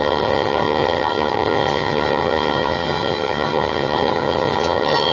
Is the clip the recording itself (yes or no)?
no